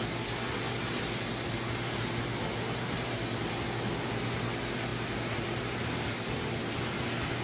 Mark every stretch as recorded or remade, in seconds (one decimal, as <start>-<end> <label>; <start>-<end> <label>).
0.0-7.4 recorded